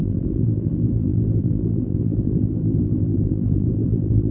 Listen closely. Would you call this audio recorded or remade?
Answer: remade